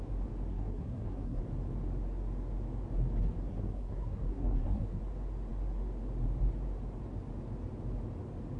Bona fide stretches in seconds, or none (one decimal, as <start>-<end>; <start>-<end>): 0.0-0.5; 1.4-3.5; 5.0-8.6

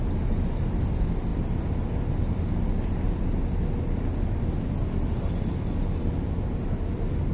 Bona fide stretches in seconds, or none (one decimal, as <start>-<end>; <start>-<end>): 0.0-7.3

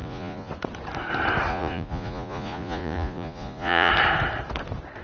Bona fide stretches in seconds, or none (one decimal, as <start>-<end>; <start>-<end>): 0.5-1.5; 3.9-5.0

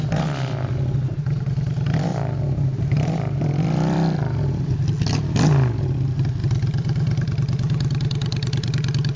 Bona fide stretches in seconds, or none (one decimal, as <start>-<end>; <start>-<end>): 0.0-2.1; 4.7-6.4

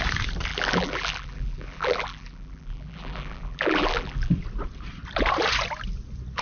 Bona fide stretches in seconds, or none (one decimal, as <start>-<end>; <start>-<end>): 0.0-0.5; 4.3-6.4

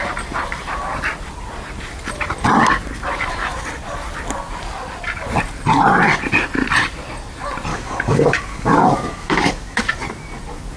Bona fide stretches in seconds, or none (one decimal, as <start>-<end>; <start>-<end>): 0.0-7.7; 9.8-10.8

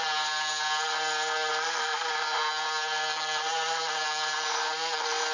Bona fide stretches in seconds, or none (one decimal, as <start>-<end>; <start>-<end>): 0.0-5.3